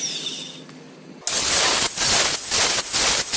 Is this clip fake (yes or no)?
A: no